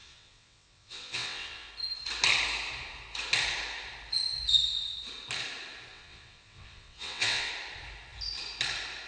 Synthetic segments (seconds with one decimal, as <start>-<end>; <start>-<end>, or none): 0.0-1.7; 5.9-7.5